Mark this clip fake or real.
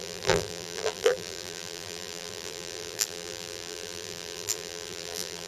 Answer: fake